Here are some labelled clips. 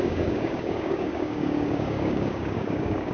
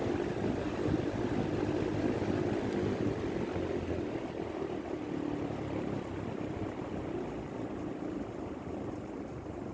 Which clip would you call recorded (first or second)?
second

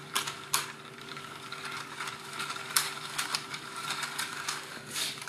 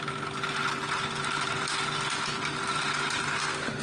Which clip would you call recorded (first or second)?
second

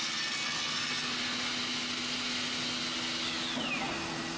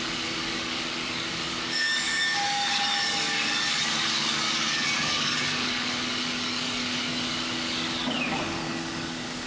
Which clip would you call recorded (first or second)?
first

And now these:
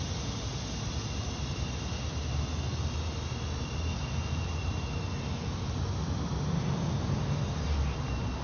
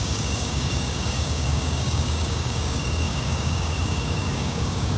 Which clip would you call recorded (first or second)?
first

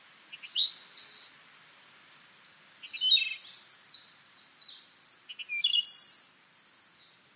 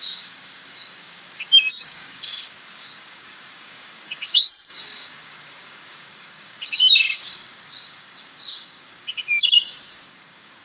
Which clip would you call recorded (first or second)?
first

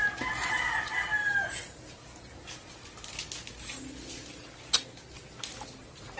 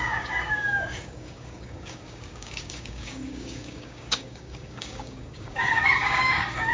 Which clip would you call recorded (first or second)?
first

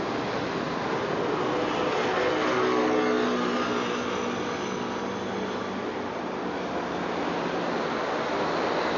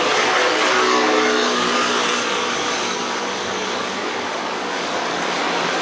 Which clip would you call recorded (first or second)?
first